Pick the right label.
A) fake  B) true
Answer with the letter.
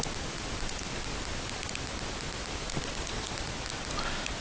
B